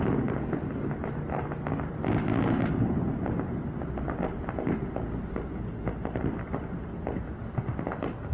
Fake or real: real